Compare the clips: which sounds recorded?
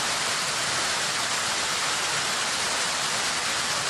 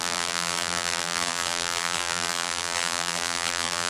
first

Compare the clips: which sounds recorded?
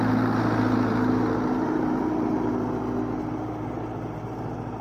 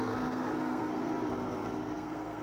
first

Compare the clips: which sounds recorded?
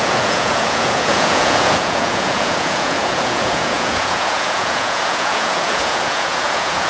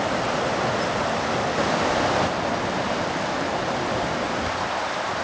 second